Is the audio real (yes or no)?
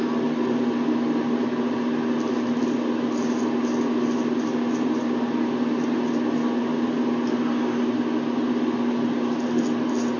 yes